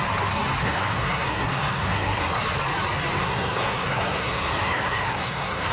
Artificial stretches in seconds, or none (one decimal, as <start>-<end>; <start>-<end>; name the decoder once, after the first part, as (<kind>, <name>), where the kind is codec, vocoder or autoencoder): 0.6-2.4 (codec, SNAC); 3.2-5.7